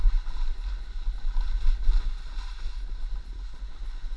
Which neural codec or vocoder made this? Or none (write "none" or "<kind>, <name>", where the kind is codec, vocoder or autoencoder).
none